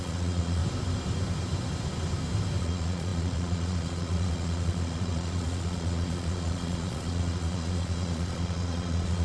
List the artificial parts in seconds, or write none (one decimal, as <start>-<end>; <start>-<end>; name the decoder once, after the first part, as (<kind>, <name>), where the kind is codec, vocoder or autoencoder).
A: 0.0-0.6 (vocoder, Vocos); 2.6-9.2